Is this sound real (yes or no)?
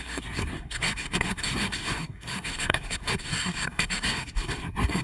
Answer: no